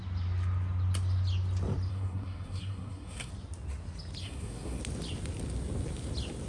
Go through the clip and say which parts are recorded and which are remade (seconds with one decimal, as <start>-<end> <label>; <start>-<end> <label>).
0.0-1.9 recorded; 1.9-3.3 remade; 3.3-4.2 recorded; 4.2-4.8 remade; 4.8-6.5 recorded